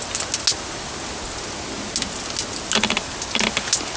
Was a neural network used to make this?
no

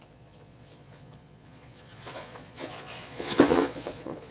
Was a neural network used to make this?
yes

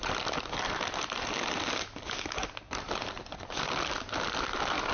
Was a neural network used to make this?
no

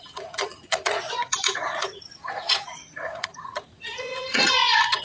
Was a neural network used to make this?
yes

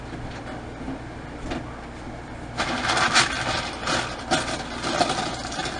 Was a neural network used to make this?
no